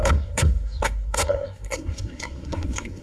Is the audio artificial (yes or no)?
yes